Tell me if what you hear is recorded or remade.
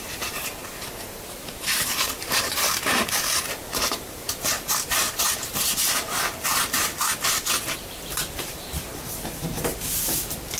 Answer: remade